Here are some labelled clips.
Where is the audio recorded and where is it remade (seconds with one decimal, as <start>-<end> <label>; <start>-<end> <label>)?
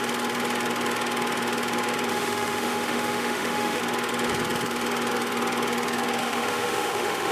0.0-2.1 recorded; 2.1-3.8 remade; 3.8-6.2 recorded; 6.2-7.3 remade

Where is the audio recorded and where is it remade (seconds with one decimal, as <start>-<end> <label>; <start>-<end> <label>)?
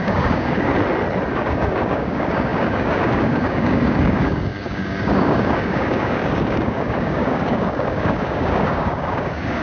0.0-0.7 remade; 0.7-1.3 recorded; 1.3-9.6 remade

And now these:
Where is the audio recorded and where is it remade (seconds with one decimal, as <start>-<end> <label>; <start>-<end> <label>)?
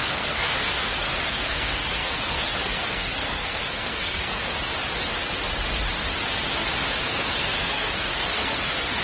0.0-4.5 remade; 4.5-7.0 recorded; 7.0-9.0 remade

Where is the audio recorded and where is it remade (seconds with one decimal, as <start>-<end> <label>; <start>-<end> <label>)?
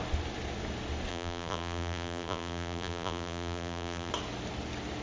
0.0-1.1 recorded; 1.1-4.1 remade; 4.1-5.0 recorded